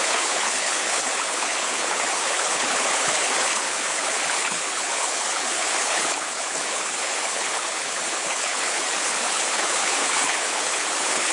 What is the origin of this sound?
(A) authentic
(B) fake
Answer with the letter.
B